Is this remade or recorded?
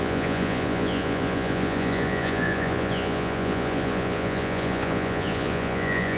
remade